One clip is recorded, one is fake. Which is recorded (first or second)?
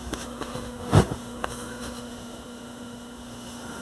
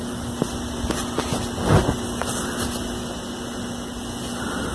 second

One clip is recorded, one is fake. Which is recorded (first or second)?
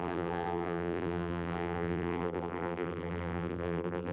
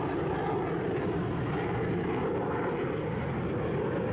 second